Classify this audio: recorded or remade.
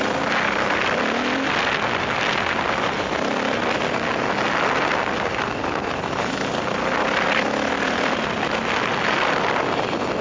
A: recorded